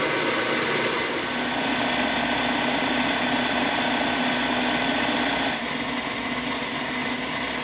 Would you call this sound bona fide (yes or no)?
yes